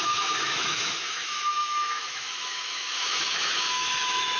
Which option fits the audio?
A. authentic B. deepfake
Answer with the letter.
B